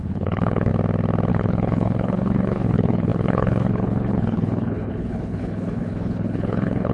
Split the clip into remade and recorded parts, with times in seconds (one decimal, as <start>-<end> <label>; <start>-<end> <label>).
0.0-0.7 remade; 0.7-1.3 recorded; 1.3-6.9 remade